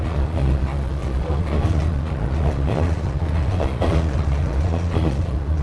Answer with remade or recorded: remade